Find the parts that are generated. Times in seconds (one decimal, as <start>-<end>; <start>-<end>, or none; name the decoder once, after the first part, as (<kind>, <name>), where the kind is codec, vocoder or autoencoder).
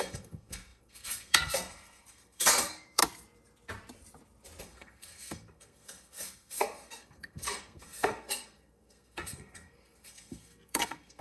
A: 0.0-3.0 (codec, SNAC); 4.6-11.2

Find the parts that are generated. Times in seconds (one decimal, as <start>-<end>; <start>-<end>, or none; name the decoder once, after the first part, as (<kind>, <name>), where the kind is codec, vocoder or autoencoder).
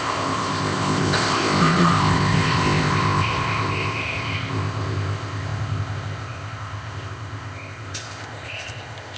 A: 0.0-9.2 (codec, ZipCodec)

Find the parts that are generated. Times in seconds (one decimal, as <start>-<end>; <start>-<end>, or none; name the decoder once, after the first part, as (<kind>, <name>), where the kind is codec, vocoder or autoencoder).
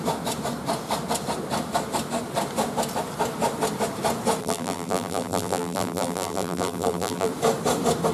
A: 4.4-7.3 (vocoder, BigVGAN v2)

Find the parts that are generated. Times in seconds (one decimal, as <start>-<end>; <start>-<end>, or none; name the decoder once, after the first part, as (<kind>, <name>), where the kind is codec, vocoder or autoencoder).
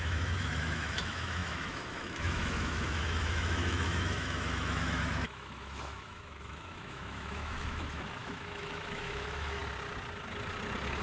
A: 0.0-9.6 (autoencoder, DAC-VAE)